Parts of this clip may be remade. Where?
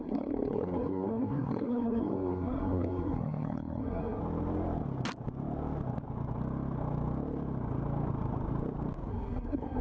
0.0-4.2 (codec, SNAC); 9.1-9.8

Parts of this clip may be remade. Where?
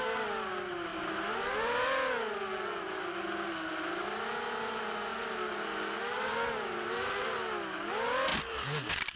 none